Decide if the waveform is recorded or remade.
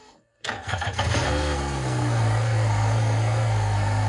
remade